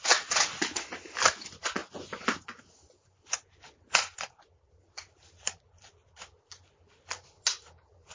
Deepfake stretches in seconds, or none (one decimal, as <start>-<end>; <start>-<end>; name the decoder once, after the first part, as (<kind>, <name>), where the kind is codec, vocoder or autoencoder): none